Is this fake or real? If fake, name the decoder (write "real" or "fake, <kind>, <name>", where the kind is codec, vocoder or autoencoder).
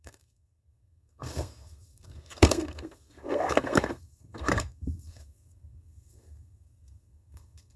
fake, codec, SNAC